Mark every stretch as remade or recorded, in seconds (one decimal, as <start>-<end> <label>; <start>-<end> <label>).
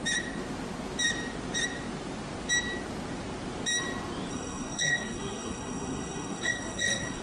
0.0-4.3 recorded; 4.3-7.2 remade